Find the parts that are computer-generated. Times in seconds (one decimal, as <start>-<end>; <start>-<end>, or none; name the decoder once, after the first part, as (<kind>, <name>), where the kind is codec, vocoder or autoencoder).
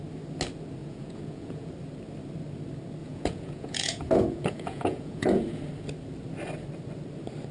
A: 0.8-1.7 (vocoder, Vocos); 3.0-5.6